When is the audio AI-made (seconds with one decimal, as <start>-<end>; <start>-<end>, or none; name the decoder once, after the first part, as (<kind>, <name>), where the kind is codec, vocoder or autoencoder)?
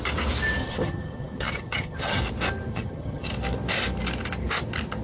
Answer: 0.6-2.2 (vocoder, HiFi-GAN); 2.7-3.3